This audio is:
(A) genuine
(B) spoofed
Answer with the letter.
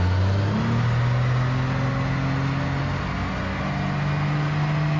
A